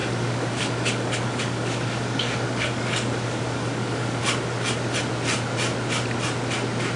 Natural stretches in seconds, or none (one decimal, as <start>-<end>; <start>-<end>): 4.2-7.0